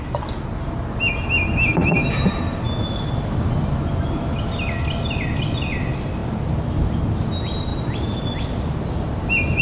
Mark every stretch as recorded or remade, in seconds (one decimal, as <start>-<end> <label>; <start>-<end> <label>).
0.0-9.6 recorded